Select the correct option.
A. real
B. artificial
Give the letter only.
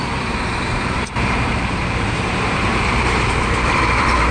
B